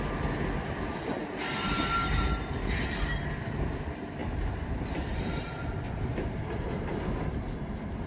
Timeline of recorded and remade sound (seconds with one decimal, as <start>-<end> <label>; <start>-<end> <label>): 0.0-1.2 recorded; 1.2-3.0 remade; 3.0-4.2 recorded; 4.2-5.4 remade; 5.4-6.1 recorded; 6.1-7.4 remade; 7.4-8.1 recorded